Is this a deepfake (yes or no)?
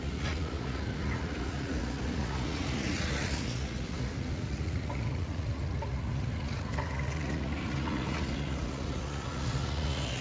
yes